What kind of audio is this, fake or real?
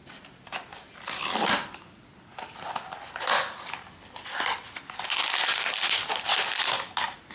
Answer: real